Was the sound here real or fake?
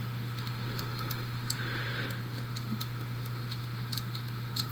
fake